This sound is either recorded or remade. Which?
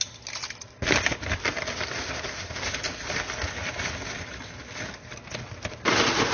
recorded